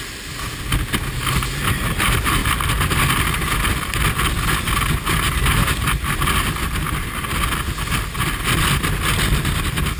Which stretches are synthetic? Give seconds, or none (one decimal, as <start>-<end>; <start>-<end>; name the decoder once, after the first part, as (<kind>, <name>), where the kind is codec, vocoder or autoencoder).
none